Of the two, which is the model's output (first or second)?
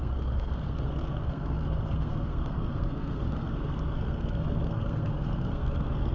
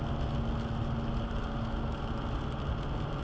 first